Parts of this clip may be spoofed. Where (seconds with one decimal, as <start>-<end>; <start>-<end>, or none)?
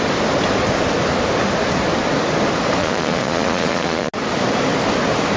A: 2.8-4.1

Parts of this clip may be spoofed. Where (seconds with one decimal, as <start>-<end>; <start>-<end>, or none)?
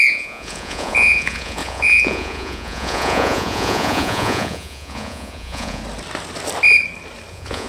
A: 0.0-5.8; 7.3-7.7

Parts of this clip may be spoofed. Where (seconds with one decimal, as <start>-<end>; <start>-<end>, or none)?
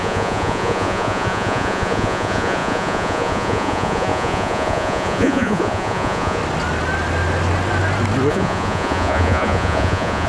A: 0.0-6.4; 8.3-10.3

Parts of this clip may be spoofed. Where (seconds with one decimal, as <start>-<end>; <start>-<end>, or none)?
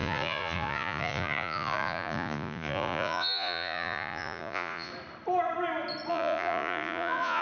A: 0.0-4.9; 6.1-7.4